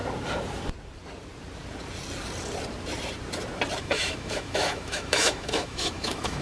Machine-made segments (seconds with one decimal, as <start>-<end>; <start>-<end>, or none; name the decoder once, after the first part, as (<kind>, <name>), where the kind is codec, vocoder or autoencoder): 3.8-6.4 (autoencoder, DAC-VAE)